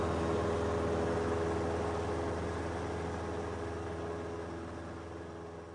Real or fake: real